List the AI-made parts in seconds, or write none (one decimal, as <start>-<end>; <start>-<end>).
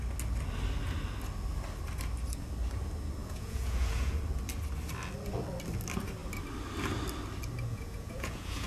3.2-4.2; 7.7-8.7